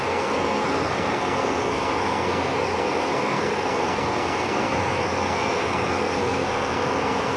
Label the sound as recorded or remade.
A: remade